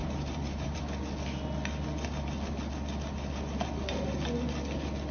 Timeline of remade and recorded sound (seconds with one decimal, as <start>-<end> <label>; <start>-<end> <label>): 0.0-0.8 remade; 0.8-5.1 recorded